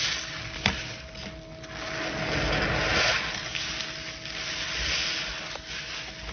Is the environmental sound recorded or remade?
recorded